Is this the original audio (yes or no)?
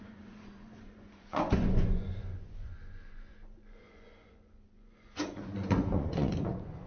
no